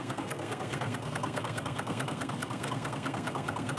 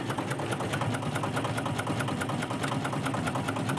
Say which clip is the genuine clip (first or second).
second